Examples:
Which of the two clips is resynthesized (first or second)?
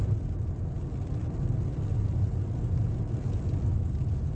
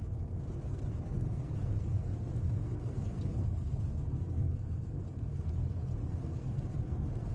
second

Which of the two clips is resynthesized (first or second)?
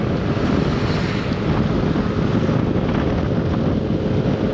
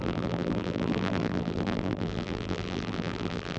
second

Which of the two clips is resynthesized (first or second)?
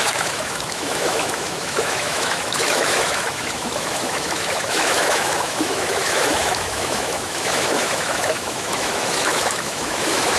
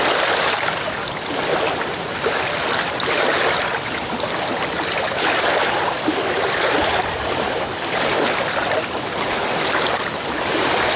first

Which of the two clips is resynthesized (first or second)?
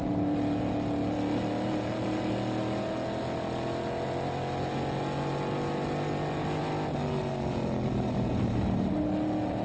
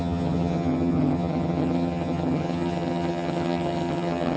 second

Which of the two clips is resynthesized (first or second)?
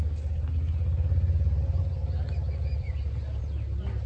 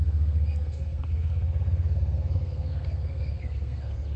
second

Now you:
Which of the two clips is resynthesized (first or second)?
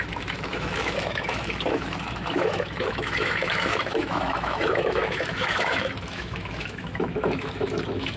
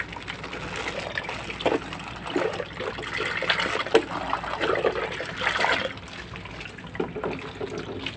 first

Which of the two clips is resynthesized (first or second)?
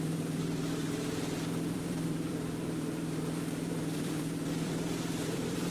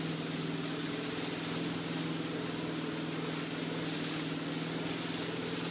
first